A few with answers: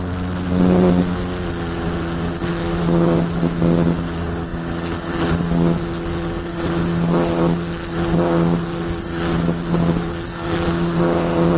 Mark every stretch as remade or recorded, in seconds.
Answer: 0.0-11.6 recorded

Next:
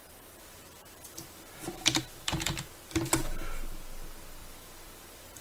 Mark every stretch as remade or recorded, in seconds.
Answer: 0.0-2.7 remade; 2.7-4.4 recorded; 4.4-5.4 remade

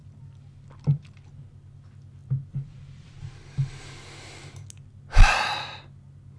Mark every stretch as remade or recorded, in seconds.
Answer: 0.0-1.3 remade; 1.3-2.2 recorded; 2.2-3.7 remade; 3.7-6.4 recorded

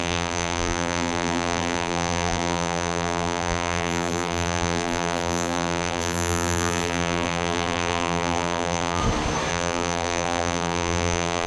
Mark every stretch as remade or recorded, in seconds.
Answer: 0.0-9.0 remade; 9.0-9.5 recorded; 9.5-11.5 remade

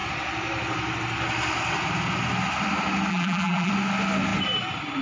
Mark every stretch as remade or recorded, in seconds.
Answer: 0.0-3.1 recorded; 3.1-3.7 remade; 3.7-5.0 recorded

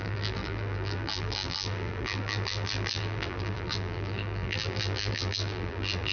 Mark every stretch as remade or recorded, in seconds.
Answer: 0.0-6.1 remade

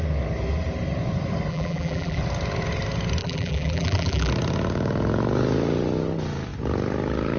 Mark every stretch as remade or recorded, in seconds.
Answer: 0.0-1.5 recorded; 1.5-2.2 remade; 2.2-3.2 recorded; 3.2-4.3 remade; 4.3-7.4 recorded

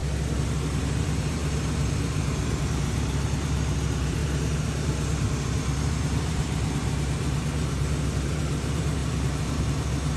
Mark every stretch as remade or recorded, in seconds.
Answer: 0.0-0.8 recorded; 0.8-10.2 remade